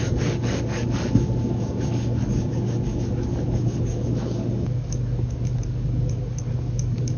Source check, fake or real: fake